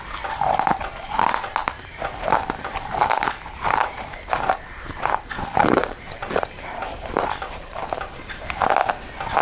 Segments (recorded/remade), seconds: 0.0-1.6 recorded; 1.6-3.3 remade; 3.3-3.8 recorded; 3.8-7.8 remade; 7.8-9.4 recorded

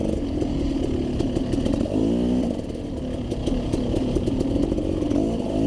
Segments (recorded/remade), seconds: 0.0-5.7 recorded

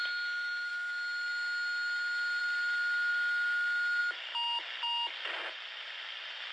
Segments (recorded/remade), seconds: 0.0-6.5 recorded

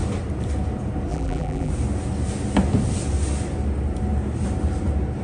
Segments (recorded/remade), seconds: 0.0-1.1 recorded; 1.1-1.7 remade; 1.7-5.2 recorded

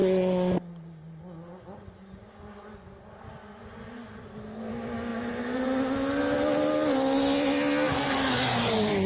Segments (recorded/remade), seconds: 0.0-5.1 recorded; 5.1-5.8 remade; 5.8-9.1 recorded

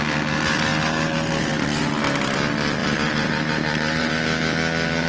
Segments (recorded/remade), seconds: 0.0-2.8 recorded; 2.8-4.1 remade; 4.1-5.1 recorded

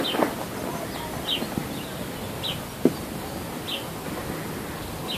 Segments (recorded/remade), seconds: 0.0-5.2 recorded

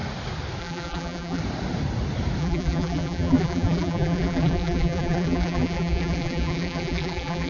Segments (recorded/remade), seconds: 0.0-0.6 recorded; 0.6-1.4 remade; 1.4-2.4 recorded; 2.4-7.5 remade